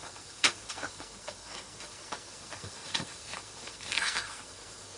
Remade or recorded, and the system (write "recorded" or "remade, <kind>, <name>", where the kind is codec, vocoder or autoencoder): remade, codec, SNAC